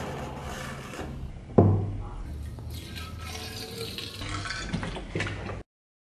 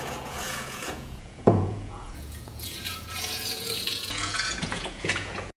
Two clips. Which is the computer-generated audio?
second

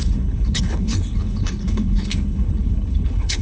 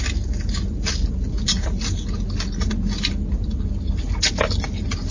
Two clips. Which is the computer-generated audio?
first